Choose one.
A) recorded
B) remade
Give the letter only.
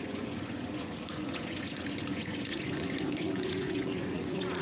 B